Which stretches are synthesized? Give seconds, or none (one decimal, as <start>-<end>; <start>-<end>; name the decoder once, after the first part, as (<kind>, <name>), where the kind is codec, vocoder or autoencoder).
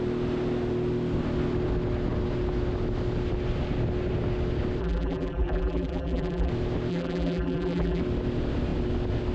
4.8-6.5 (vocoder, BigVGAN v2); 6.9-8.0